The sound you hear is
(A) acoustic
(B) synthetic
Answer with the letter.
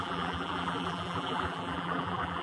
B